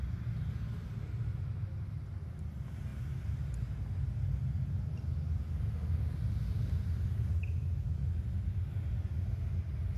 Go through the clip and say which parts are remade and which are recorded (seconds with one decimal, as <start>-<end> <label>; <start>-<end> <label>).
0.0-10.0 recorded